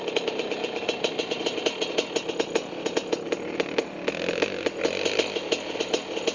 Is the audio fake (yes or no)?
no